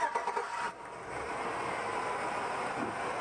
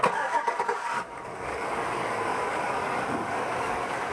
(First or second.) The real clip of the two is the first